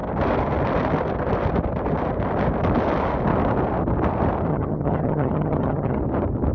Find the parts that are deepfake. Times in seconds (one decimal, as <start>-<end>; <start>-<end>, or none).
4.5-6.0